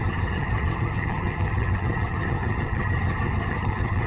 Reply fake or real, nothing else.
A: fake